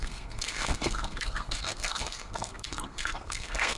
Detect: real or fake fake